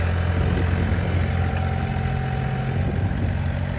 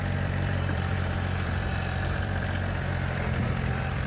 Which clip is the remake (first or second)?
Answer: second